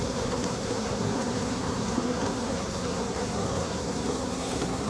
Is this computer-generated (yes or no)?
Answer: yes